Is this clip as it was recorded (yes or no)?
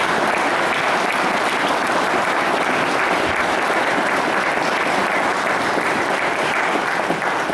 yes